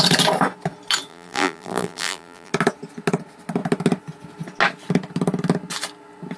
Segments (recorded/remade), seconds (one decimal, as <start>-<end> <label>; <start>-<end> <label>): 0.0-1.1 recorded; 1.1-2.5 remade; 2.5-6.4 recorded